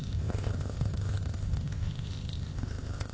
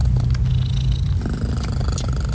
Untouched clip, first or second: second